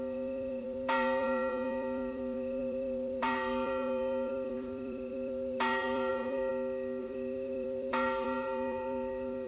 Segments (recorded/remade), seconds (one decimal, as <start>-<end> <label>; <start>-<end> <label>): 0.0-6.5 remade; 6.5-7.0 recorded; 7.0-9.5 remade